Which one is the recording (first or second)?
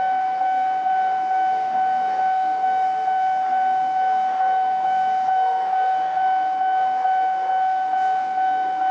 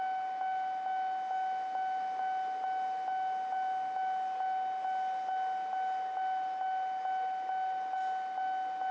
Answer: second